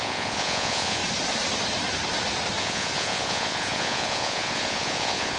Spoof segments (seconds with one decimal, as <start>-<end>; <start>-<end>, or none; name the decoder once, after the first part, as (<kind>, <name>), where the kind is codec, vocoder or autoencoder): 0.0-1.0 (vocoder, Vocos); 2.6-5.4